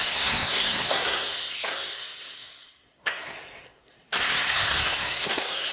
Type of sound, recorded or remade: remade